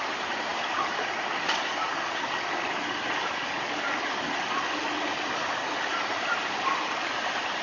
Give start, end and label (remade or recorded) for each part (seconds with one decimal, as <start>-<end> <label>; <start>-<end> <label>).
0.0-7.6 recorded